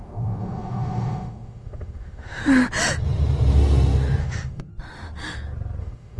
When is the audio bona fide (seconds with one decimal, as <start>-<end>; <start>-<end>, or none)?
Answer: 2.4-4.2; 4.7-5.8